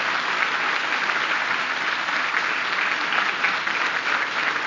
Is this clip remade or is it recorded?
recorded